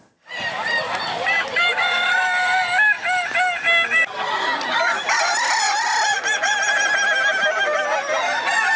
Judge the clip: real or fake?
real